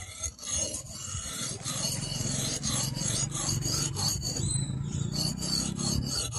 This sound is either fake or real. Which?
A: fake